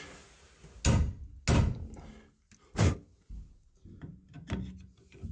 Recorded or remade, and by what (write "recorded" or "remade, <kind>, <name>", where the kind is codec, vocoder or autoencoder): recorded